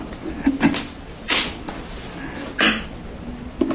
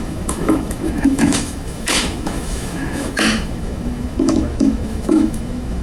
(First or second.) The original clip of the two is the first